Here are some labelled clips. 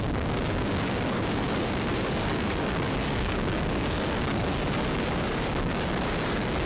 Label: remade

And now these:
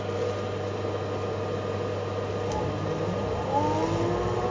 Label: recorded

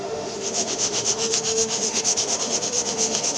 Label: remade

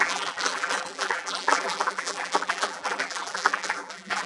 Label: remade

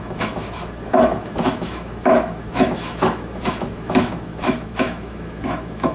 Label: remade